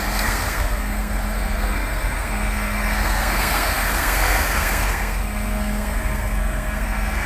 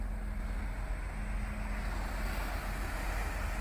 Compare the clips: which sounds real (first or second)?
second